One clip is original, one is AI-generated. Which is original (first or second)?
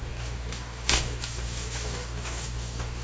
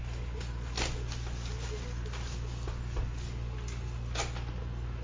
second